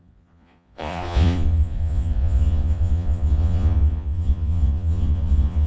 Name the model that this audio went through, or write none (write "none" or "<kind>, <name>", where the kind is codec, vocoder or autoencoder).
vocoder, Vocos